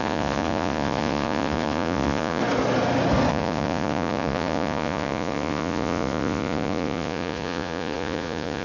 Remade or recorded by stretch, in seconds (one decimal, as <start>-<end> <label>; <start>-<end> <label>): 0.0-2.4 remade; 2.4-3.3 recorded; 3.3-8.6 remade